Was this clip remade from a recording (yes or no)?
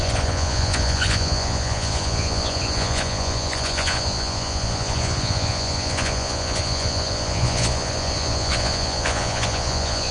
yes